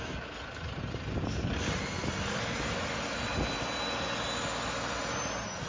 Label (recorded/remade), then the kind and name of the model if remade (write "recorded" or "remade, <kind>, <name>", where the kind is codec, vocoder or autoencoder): recorded